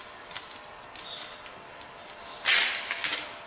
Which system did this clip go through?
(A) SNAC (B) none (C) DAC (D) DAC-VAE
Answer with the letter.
B